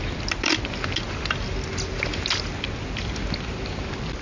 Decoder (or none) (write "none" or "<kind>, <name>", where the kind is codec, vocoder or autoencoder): none